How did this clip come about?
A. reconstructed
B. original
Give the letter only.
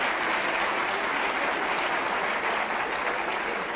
B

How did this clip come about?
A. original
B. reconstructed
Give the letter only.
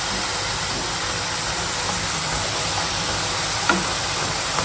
A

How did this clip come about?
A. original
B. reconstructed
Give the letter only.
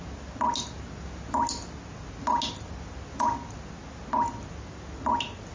A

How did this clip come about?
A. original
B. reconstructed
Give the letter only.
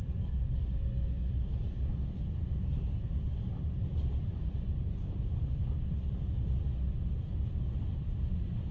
A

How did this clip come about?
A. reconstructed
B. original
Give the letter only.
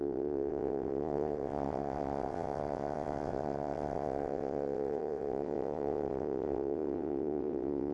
A